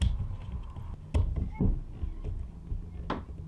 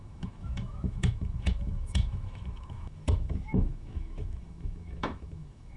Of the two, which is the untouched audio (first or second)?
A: first